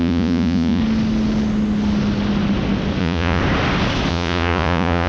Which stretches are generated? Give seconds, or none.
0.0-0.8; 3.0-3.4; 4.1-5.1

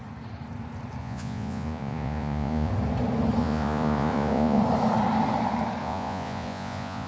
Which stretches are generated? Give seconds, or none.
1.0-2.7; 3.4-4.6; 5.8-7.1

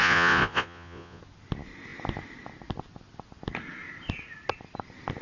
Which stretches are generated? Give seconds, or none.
0.0-1.2

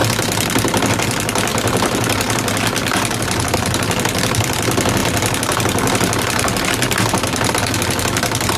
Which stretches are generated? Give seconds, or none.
none

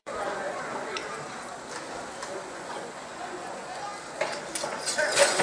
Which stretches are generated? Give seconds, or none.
0.0-1.0; 2.3-3.9; 4.6-5.4

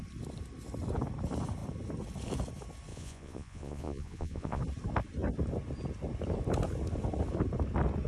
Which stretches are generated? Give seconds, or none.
2.9-4.6

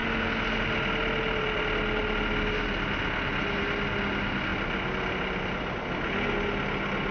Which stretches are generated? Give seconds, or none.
none

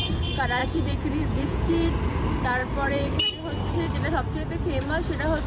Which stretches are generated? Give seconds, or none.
0.6-1.7